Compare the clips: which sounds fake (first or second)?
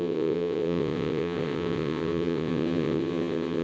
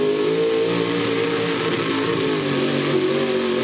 first